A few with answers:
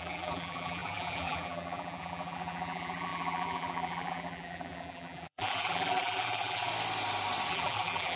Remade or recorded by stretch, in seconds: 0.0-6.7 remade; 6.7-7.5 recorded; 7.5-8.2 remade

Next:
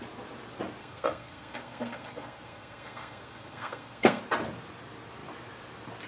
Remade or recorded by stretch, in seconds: 0.0-0.8 recorded; 0.8-4.2 remade; 4.2-6.1 recorded